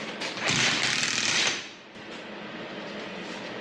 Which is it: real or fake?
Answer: real